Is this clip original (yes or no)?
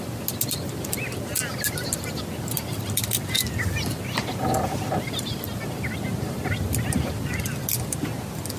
yes